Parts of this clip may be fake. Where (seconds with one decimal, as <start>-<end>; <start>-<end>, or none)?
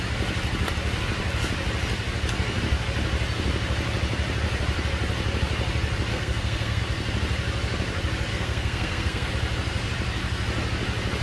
6.1-6.8; 8.3-9.3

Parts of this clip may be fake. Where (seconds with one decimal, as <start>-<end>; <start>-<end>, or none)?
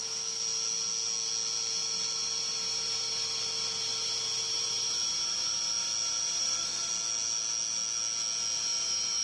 6.4-6.9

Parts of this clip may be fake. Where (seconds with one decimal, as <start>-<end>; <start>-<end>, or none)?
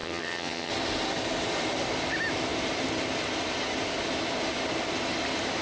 0.0-0.7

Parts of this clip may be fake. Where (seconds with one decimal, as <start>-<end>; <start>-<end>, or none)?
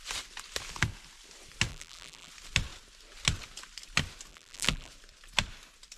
1.7-2.3; 4.3-4.9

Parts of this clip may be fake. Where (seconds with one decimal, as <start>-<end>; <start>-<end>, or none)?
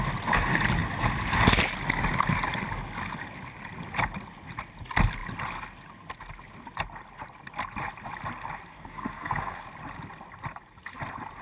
8.7-9.6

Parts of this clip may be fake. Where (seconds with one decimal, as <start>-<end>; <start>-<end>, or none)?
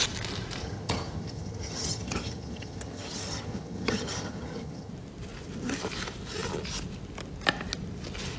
0.6-4.9